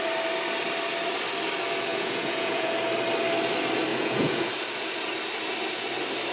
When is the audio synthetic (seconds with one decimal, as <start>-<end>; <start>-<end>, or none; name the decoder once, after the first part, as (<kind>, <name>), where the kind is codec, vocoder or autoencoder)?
1.9-2.7 (vocoder, Vocos); 3.9-4.5

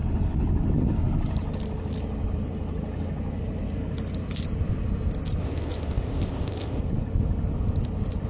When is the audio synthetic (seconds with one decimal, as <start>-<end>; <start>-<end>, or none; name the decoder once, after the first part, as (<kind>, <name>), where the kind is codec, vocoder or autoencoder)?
5.4-6.8 (codec, ZipCodec)

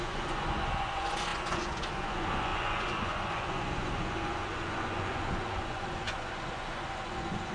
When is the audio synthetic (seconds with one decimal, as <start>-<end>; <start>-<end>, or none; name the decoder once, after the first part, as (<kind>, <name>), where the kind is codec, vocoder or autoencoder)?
0.0-7.5 (vocoder, Vocos)

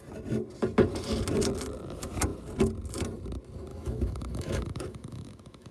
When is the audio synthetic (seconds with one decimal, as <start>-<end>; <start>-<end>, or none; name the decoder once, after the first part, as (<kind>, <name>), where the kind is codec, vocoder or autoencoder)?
3.7-5.7 (autoencoder, DAC-VAE)

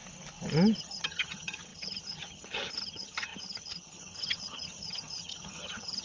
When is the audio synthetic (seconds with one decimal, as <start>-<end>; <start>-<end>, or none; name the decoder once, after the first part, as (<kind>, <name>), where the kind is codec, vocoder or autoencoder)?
0.8-6.0 (vocoder, HiFi-GAN)

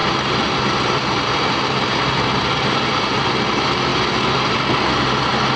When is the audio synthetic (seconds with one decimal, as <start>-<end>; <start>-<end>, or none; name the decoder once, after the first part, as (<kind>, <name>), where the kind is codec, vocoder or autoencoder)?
none

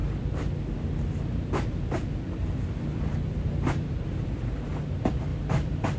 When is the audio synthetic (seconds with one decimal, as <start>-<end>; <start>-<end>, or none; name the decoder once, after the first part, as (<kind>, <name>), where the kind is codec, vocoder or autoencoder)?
2.4-4.4 (vocoder, BigVGAN v2); 5.3-6.0

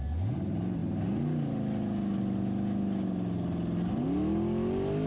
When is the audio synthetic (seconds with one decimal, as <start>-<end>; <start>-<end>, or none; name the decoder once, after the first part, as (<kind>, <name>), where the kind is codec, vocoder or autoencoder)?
none